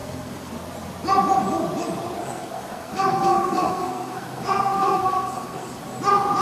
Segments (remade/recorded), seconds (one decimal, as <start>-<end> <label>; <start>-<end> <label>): 0.0-0.5 remade; 0.5-2.2 recorded; 2.2-5.8 remade; 5.8-6.4 recorded